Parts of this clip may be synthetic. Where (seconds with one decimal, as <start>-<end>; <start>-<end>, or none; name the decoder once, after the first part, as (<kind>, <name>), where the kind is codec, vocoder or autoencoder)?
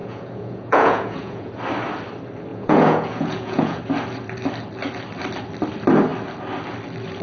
0.0-1.5 (vocoder, Vocos); 2.5-3.8